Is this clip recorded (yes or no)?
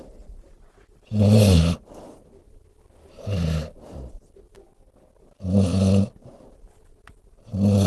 yes